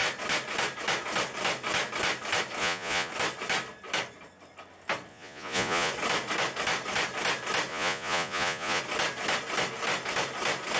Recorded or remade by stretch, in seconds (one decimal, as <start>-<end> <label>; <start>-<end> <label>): 0.0-2.6 recorded; 2.6-3.1 remade; 3.1-5.1 recorded; 5.1-5.9 remade; 5.9-7.7 recorded; 7.7-8.8 remade; 8.8-10.8 recorded